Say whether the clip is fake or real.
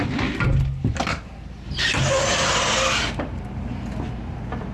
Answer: real